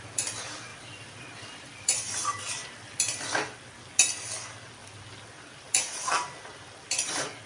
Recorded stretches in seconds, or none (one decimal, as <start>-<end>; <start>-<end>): 0.0-0.7; 2.9-4.8; 5.8-7.5